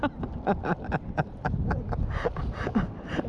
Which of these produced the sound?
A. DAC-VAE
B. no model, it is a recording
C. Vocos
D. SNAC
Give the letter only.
B